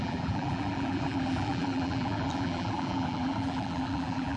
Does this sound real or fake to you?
fake